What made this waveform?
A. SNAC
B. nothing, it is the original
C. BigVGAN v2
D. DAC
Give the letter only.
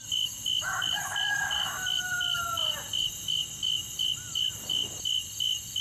C